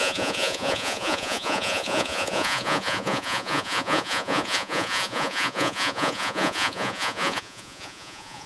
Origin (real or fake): fake